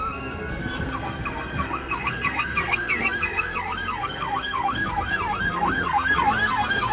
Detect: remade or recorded remade